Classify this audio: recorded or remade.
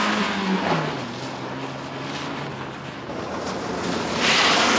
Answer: recorded